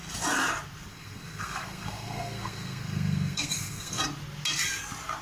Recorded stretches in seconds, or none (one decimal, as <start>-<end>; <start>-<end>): 0.0-0.9; 4.0-5.2